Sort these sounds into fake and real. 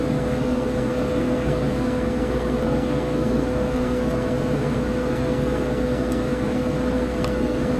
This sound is fake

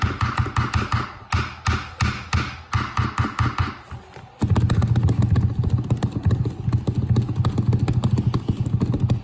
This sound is real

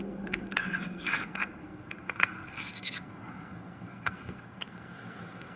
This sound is fake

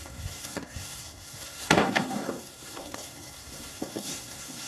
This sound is fake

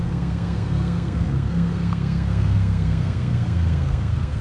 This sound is fake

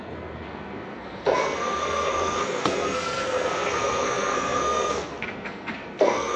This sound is fake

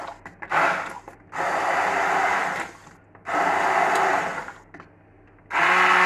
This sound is real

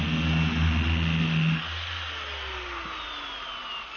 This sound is real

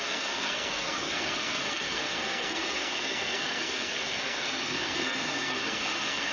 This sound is fake